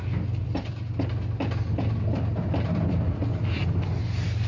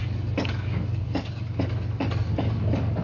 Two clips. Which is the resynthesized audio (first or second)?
second